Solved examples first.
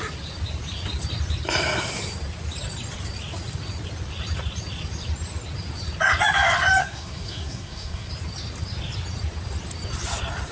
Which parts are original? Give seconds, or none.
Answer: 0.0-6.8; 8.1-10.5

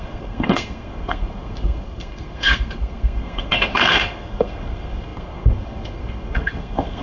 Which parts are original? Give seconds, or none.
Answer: none